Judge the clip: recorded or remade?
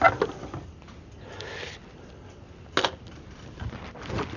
recorded